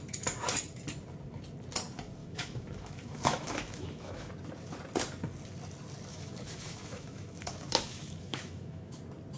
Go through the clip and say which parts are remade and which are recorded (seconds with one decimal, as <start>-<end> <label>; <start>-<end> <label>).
0.0-2.2 recorded; 2.2-4.3 remade; 4.3-6.1 recorded; 6.1-9.0 remade; 9.0-9.4 recorded